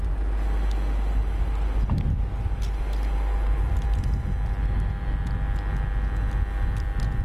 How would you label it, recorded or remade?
recorded